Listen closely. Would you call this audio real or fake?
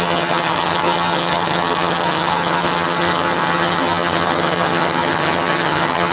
fake